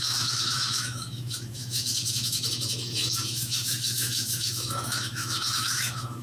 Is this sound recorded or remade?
remade